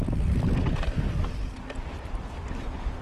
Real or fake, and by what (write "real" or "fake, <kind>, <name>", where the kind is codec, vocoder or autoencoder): real